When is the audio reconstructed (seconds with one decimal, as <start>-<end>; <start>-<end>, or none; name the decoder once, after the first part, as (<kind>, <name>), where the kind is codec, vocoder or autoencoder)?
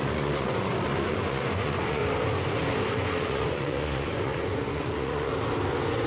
0.0-2.0 (vocoder, Vocos); 2.9-5.3